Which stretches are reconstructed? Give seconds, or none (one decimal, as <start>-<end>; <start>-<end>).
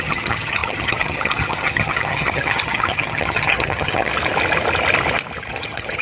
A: 0.0-4.1; 5.4-6.0